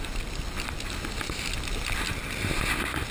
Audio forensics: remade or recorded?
recorded